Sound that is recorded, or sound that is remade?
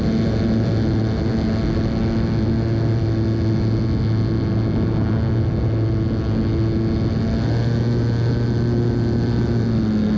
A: recorded